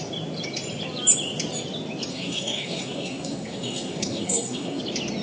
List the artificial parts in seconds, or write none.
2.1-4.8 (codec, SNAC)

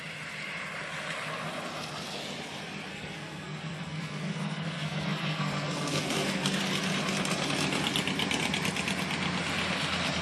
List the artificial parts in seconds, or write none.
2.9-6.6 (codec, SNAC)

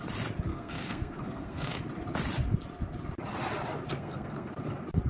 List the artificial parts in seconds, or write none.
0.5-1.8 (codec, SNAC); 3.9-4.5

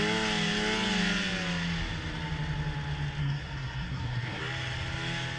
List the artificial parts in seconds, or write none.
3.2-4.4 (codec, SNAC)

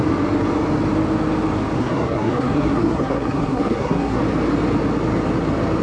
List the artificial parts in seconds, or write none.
1.8-4.2 (codec, SNAC)

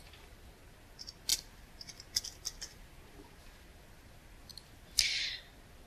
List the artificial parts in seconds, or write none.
none

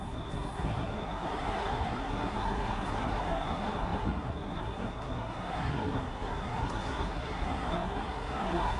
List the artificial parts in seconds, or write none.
0.0-8.8 (codec, SNAC)